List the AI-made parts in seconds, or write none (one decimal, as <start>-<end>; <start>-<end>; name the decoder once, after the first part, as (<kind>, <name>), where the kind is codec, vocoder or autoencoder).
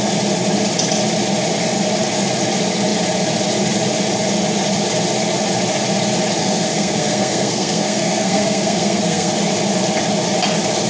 6.4-9.3 (codec, SNAC)